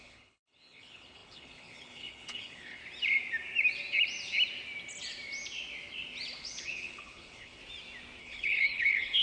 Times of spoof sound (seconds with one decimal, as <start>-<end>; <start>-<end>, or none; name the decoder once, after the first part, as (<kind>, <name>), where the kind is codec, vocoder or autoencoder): 0.0-2.8 (codec, HILCodec); 6.4-7.6; 8.2-9.2

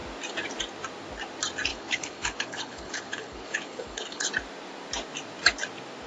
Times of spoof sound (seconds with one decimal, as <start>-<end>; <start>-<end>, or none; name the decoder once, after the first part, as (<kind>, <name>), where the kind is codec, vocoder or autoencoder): 1.7-4.3 (codec, HILCodec)